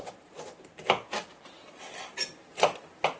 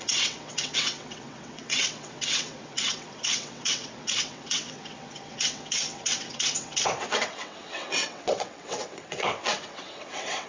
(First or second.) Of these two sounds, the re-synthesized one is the second